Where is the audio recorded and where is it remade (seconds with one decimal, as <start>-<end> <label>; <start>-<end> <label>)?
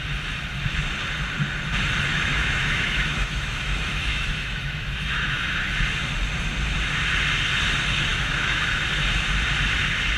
0.0-2.1 recorded; 2.1-5.6 remade; 5.6-8.1 recorded; 8.1-8.6 remade; 8.6-10.2 recorded